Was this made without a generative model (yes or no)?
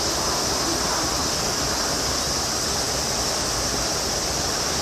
yes